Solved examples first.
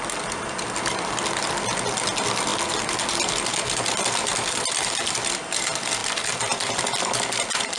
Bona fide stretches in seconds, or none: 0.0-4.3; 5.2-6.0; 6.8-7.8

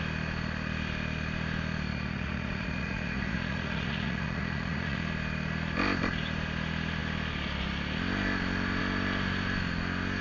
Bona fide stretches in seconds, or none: 0.0-1.9; 5.0-10.2

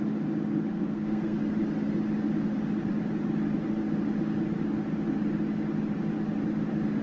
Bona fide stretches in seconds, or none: 0.0-0.7; 1.4-7.0